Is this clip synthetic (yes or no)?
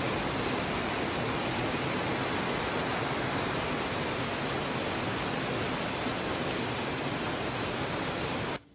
no